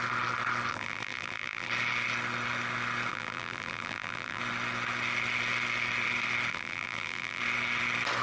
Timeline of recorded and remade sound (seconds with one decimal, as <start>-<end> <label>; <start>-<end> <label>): 0.0-0.7 recorded; 0.7-1.7 remade; 1.7-3.1 recorded; 3.1-4.4 remade; 4.4-6.5 recorded; 6.5-7.4 remade; 7.4-8.2 recorded